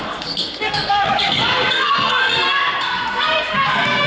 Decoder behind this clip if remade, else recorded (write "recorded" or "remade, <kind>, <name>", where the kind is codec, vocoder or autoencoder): remade, codec, SNAC